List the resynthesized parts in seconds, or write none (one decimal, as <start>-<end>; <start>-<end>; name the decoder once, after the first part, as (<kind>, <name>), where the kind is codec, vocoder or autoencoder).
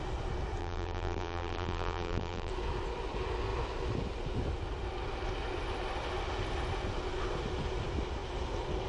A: 0.6-2.5 (vocoder, BigVGAN v2)